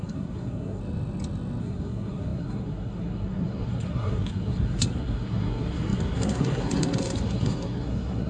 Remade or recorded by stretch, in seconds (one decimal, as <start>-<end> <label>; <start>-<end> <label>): 0.0-0.8 remade; 0.8-1.6 recorded; 1.6-8.3 remade